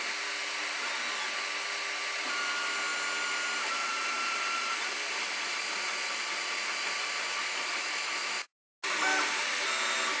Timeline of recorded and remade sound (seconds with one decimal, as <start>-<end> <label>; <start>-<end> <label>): 0.0-7.4 recorded; 7.4-8.3 remade; 8.3-10.2 recorded